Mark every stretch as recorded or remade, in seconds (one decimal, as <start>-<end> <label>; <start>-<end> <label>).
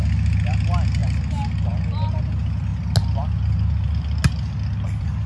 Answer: 0.0-5.3 recorded